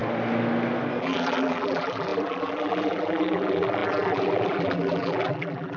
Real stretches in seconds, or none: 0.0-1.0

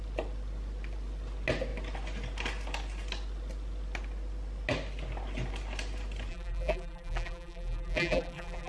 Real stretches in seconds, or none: 0.0-6.3

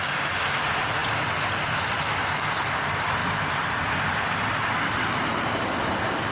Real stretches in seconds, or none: 1.0-2.6

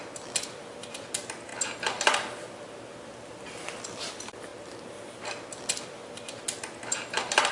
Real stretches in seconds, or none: 0.0-7.5

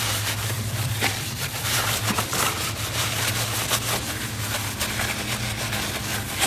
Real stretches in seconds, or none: 3.6-6.5

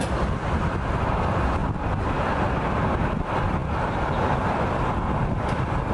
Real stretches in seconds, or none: 1.6-3.0; 3.6-4.5

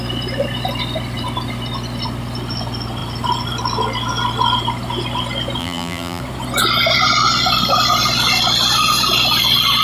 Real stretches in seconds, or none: 0.0-5.6; 6.2-9.8